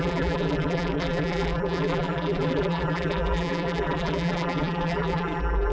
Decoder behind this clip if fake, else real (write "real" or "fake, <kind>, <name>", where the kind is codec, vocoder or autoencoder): fake, vocoder, BigVGAN v2